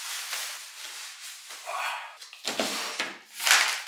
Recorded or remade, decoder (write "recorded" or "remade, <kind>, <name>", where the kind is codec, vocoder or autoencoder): recorded